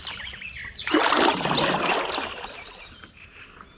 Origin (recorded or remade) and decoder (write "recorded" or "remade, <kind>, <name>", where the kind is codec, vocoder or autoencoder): recorded